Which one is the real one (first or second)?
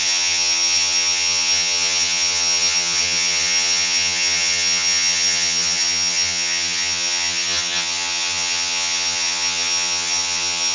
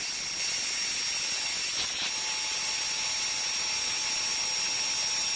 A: second